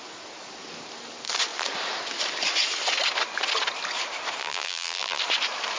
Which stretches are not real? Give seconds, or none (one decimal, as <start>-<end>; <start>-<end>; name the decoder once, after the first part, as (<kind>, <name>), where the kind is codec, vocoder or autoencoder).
4.4-5.2 (vocoder, BigVGAN v2)